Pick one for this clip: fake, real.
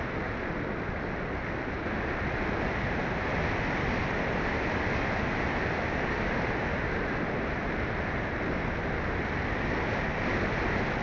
real